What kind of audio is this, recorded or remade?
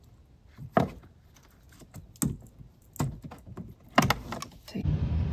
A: recorded